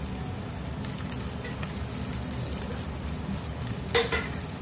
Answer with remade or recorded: recorded